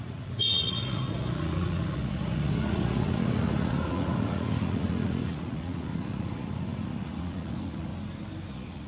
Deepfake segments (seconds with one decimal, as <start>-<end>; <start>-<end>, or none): 0.0-7.9; 8.5-8.9